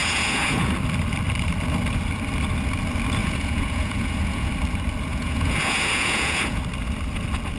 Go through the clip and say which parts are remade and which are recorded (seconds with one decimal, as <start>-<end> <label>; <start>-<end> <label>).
0.0-0.7 remade; 0.7-3.2 recorded; 3.2-4.5 remade; 4.5-5.1 recorded; 5.1-6.6 remade; 6.6-7.6 recorded